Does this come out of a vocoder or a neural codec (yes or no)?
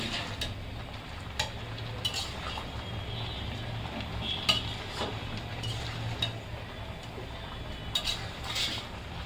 no